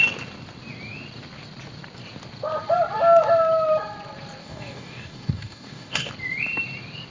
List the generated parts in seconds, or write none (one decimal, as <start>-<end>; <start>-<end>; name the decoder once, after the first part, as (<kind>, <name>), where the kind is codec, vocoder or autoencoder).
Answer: 4.4-6.1 (codec, DAC)